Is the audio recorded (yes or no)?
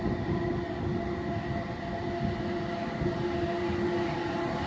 yes